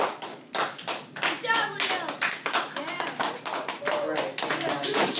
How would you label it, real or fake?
real